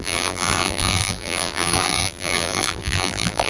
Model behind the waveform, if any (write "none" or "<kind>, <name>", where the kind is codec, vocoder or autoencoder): vocoder, BigVGAN v2